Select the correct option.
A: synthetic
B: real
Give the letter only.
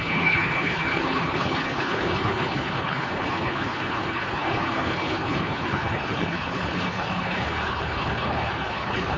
A